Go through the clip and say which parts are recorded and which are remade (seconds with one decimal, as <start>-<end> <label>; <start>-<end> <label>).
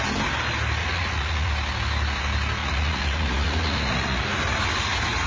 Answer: 0.0-0.8 recorded; 0.8-1.5 remade; 1.5-2.6 recorded; 2.6-4.2 remade; 4.2-5.3 recorded